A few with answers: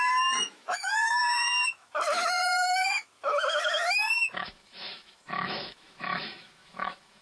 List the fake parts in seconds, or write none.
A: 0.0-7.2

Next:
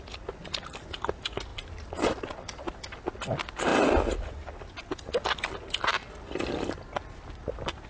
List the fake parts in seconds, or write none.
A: none

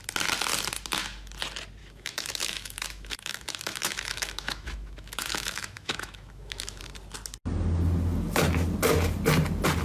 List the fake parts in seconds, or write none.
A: 1.8-6.8